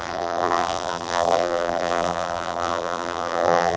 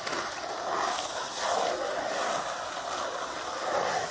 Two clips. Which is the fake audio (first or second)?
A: first